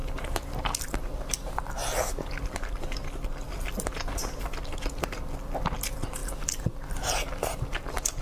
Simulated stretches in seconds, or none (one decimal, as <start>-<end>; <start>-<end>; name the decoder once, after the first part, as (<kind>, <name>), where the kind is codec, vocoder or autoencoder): 0.0-1.6 (vocoder, BigVGAN v2)